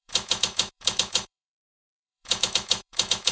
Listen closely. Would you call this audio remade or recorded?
remade